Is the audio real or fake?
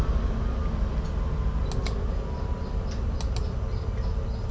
real